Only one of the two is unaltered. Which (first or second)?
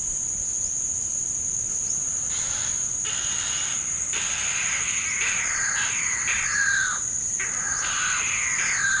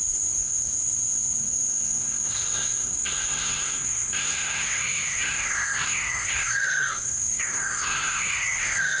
first